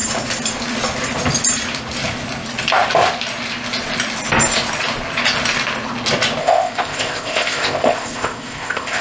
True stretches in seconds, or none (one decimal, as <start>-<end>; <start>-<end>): 0.0-6.4